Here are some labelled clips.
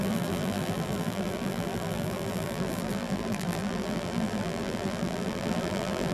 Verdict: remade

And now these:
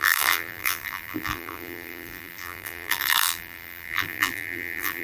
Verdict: remade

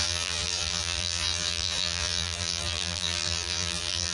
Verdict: remade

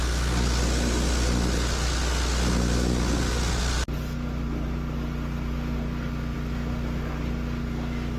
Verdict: recorded